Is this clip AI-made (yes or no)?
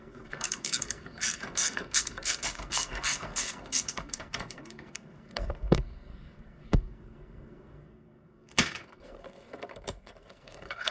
yes